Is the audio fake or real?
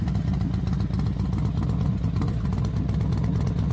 real